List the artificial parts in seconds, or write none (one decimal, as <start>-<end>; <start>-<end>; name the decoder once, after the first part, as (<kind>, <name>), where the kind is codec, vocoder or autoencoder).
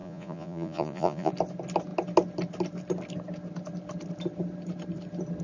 0.0-1.3 (vocoder, Vocos)